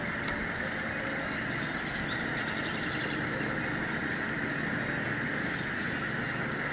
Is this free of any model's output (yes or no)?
yes